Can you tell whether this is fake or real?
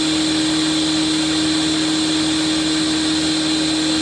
real